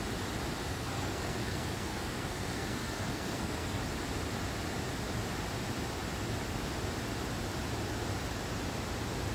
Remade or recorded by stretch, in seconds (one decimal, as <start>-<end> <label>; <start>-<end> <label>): 0.0-0.7 recorded; 0.7-3.8 remade; 3.8-9.3 recorded